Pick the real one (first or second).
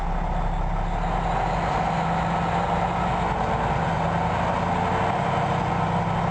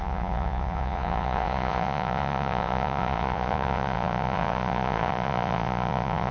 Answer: first